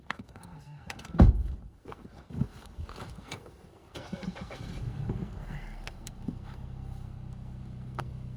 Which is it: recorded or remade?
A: remade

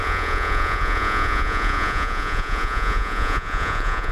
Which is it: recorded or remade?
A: remade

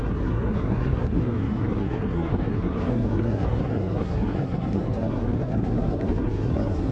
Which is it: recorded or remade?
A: remade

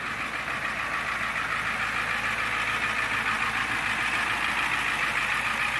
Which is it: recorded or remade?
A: recorded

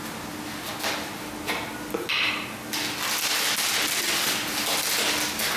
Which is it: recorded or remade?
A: recorded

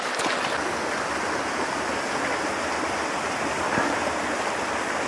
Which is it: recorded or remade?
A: recorded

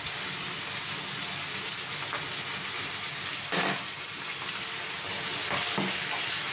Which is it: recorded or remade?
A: recorded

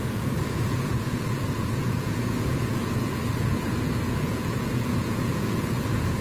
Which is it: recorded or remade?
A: remade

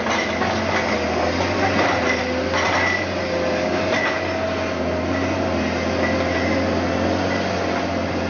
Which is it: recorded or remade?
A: recorded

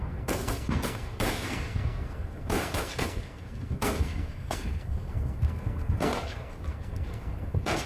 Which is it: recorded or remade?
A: remade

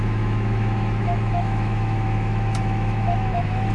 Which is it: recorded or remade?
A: remade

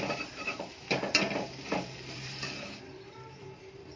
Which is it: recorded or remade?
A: remade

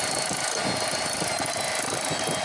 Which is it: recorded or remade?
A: recorded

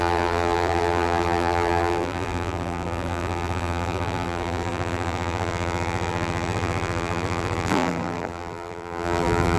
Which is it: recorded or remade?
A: remade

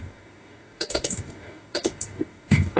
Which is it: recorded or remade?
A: remade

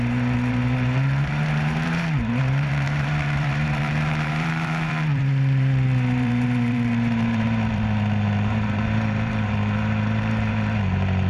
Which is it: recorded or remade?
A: remade